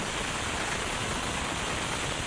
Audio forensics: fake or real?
real